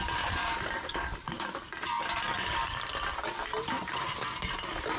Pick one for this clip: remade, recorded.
recorded